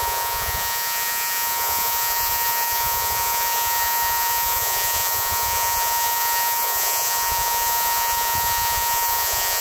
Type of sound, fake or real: fake